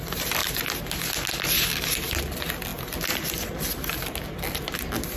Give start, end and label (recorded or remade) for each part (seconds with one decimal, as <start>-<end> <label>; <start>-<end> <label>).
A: 0.0-2.7 recorded; 2.7-4.8 remade; 4.8-5.2 recorded